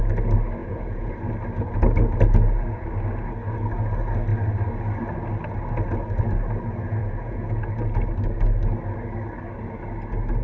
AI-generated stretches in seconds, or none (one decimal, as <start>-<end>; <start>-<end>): 0.6-1.1; 7.0-7.6